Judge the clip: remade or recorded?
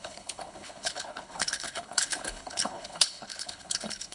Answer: remade